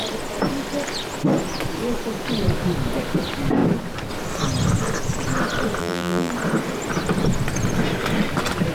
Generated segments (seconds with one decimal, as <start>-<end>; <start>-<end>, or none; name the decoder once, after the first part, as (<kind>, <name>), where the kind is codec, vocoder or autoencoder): 5.8-6.3 (vocoder, BigVGAN v2)